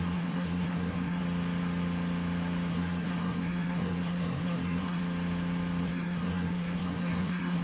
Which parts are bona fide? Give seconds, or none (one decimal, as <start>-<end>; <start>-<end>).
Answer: 1.2-2.7; 5.0-5.8